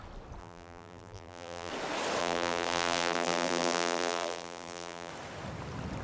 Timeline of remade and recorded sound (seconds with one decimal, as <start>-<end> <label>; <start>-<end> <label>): 0.0-0.4 recorded; 0.4-1.7 remade; 1.7-2.2 recorded; 2.2-5.1 remade; 5.1-6.0 recorded